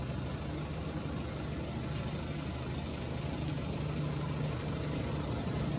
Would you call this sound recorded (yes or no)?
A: yes